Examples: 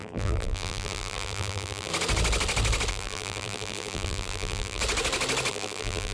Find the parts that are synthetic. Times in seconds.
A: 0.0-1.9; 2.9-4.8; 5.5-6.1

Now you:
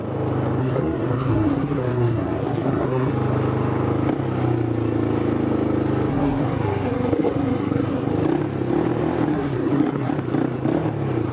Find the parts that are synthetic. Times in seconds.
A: 0.6-3.1; 6.1-8.1; 9.3-10.1

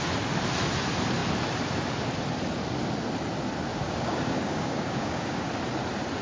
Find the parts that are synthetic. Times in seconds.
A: 3.7-5.4

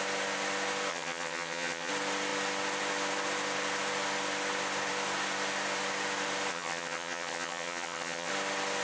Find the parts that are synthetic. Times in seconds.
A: 0.9-1.9; 6.5-8.3

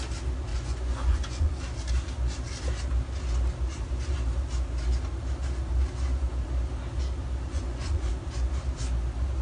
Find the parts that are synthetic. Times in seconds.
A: 0.5-1.5; 7.5-8.1

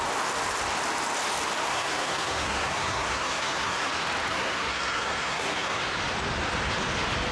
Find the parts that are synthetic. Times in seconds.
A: 1.7-3.9; 4.3-5.8

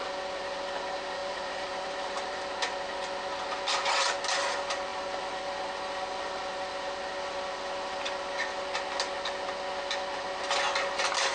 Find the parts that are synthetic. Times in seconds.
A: 1.2-2.4